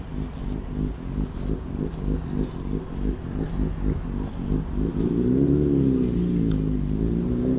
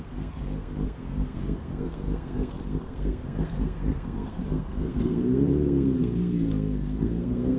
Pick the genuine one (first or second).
first